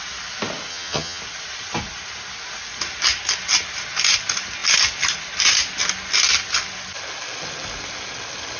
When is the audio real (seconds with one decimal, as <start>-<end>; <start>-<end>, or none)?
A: 0.0-0.7; 1.2-8.6